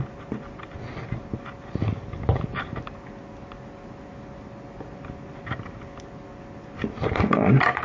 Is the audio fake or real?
real